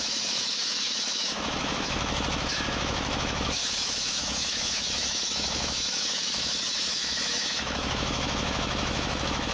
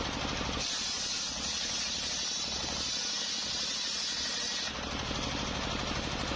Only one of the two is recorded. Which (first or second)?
second